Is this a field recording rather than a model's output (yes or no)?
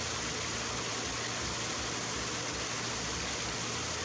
yes